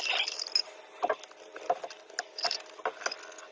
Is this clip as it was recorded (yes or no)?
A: yes